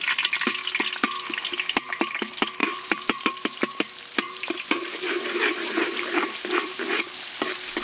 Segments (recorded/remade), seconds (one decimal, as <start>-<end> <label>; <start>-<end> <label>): 0.0-2.6 recorded; 2.6-7.0 remade; 7.0-7.8 recorded